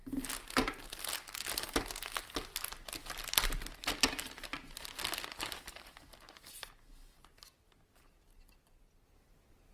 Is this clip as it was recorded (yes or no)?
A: yes